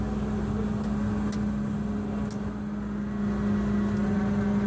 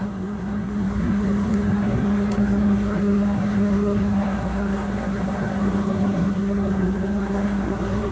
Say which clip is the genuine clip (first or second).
first